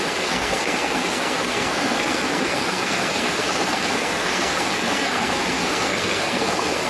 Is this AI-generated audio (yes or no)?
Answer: yes